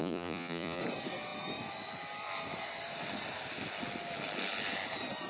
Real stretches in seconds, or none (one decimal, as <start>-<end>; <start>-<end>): 0.8-5.3